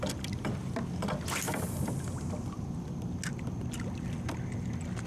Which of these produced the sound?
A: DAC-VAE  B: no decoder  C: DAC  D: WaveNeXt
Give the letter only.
B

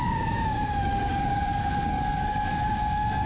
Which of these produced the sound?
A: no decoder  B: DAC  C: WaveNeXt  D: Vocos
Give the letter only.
B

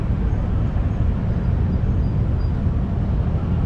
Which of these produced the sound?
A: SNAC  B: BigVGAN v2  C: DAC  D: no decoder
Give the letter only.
D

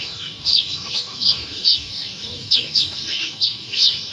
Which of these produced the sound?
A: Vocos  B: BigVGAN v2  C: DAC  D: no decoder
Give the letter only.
C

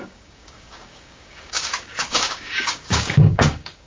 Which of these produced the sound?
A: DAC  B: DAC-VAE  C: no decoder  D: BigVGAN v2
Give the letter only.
A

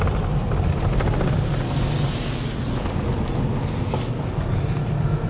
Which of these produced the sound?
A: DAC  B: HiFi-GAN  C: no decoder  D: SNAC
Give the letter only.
C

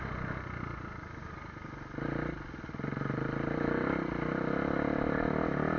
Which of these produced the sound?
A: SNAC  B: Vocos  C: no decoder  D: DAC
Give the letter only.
C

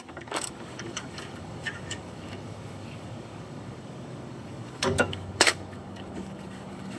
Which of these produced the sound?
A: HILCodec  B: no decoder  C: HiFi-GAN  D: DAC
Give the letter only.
D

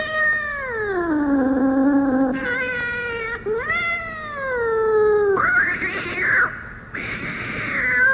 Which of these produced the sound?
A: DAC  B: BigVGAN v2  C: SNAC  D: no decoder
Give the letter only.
D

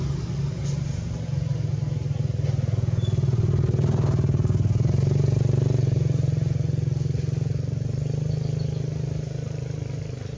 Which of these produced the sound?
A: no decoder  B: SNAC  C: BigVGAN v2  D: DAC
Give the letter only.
A